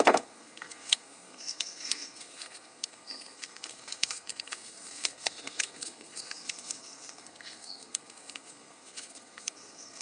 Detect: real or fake fake